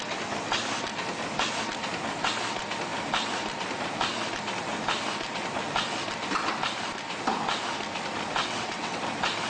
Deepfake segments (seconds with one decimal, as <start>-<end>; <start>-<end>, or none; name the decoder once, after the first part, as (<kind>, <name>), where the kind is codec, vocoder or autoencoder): 8.4-9.0 (vocoder, WaveNeXt)